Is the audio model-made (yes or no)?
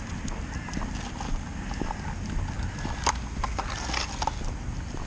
no